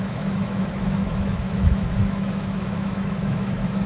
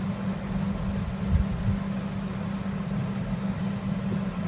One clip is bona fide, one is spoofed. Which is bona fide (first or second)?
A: second